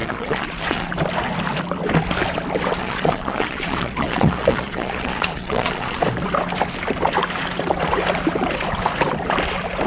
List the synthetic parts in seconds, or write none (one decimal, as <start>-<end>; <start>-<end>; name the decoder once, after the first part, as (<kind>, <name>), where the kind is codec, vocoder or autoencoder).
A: 0.0-0.9 (vocoder, Vocos); 2.8-6.0